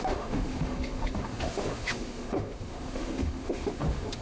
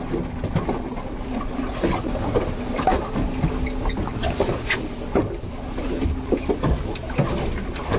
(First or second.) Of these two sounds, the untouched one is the second